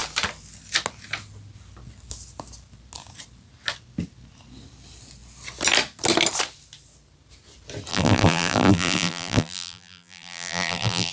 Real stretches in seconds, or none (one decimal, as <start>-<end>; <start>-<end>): 0.0-7.9